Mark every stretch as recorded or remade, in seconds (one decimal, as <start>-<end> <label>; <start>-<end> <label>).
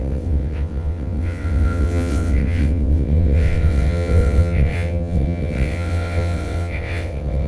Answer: 0.0-7.5 remade